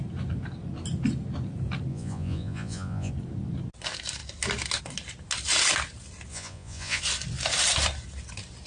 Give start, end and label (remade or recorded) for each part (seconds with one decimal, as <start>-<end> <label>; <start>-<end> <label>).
0.0-1.9 recorded; 1.9-3.1 remade; 3.1-6.3 recorded; 6.3-7.0 remade; 7.0-8.7 recorded